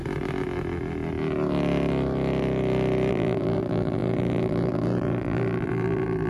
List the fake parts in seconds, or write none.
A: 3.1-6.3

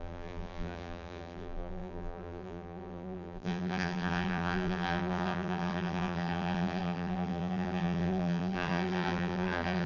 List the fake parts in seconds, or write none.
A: 0.0-9.9

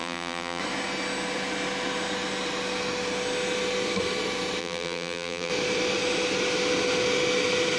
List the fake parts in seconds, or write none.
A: 0.0-0.6; 4.6-5.5